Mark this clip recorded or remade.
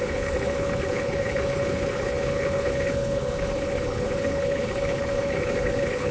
remade